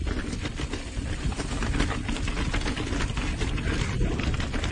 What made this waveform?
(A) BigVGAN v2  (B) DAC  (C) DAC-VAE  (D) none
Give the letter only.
D